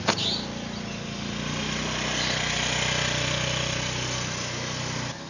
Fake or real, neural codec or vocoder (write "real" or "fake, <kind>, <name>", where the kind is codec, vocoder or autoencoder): real